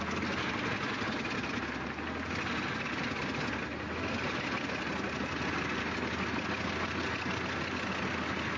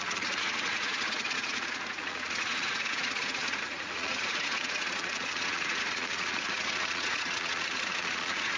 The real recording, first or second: first